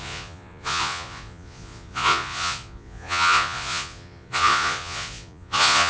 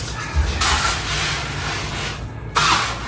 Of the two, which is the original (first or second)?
second